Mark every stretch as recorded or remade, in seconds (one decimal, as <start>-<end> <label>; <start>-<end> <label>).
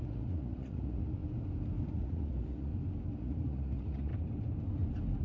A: 0.0-1.2 remade; 1.2-1.9 recorded; 1.9-2.7 remade; 2.7-3.2 recorded; 3.2-4.1 remade; 4.1-5.2 recorded